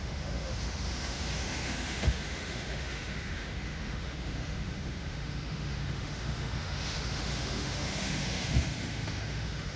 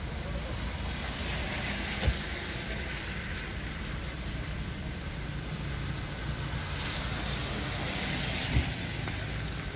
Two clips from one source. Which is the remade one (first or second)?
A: first